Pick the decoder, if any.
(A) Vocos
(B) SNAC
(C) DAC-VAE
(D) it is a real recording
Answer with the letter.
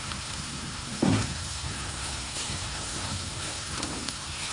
B